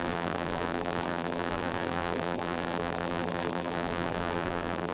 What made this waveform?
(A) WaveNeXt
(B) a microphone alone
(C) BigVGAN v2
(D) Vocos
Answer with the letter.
C